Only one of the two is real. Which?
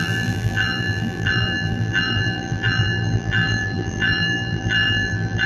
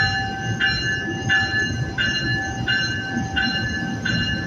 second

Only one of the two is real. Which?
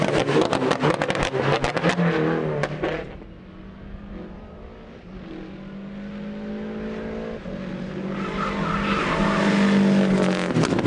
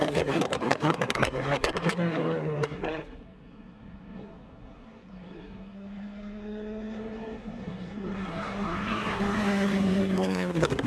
first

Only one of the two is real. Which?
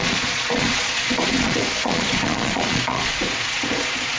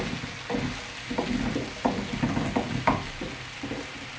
second